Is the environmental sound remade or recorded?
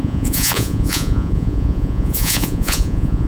remade